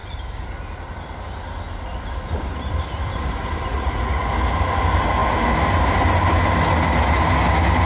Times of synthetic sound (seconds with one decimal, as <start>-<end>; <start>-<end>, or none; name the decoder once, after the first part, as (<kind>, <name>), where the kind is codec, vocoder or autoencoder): 3.7-4.3 (vocoder, Vocos)